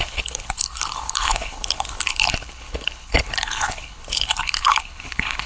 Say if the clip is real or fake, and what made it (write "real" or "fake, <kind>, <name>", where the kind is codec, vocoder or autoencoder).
fake, codec, HILCodec